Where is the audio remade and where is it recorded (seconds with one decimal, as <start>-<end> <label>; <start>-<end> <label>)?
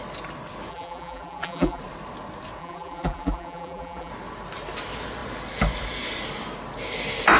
0.0-0.7 recorded; 0.7-1.8 remade; 1.8-2.6 recorded; 2.6-4.1 remade; 4.1-7.4 recorded